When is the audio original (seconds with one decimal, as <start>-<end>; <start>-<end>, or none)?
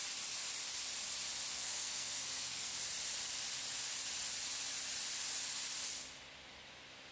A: 0.0-1.5; 2.7-7.1